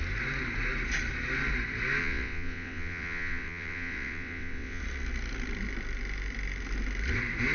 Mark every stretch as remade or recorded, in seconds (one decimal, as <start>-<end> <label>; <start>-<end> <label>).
0.0-2.0 recorded; 2.0-4.8 remade; 4.8-7.5 recorded